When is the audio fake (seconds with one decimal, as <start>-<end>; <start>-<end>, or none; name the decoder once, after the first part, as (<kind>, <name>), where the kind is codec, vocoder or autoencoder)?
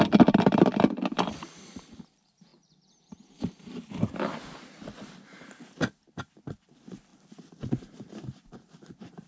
0.0-9.3 (vocoder, BigVGAN v2)